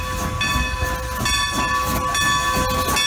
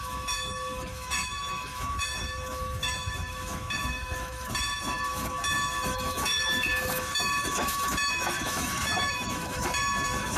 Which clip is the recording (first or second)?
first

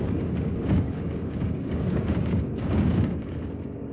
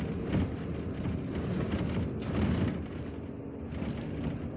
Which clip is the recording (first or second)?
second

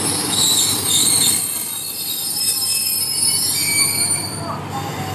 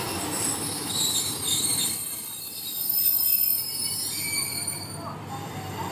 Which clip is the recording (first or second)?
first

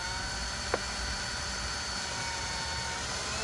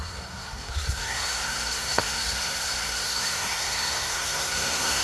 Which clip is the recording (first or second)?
first